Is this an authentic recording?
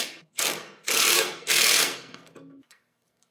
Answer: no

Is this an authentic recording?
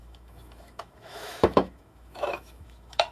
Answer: no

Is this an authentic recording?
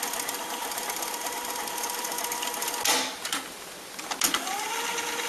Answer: yes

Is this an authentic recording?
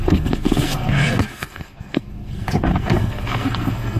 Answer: no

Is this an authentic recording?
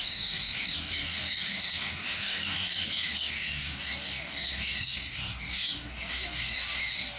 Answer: no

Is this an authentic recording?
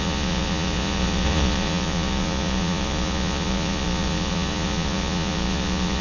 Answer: no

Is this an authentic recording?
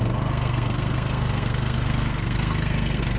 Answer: no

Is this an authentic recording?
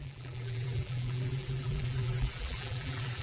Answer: no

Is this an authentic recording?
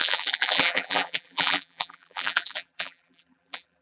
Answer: no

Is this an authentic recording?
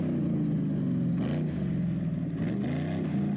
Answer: yes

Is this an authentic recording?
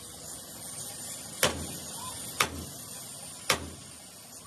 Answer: yes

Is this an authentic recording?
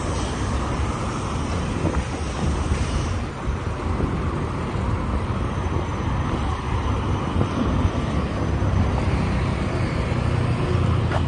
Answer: yes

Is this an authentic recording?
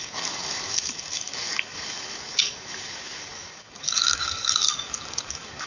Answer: no